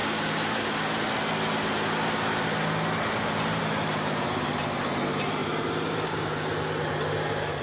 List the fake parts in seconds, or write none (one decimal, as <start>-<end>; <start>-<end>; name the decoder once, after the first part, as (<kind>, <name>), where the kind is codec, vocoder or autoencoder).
5.4-6.1 (vocoder, BigVGAN v2)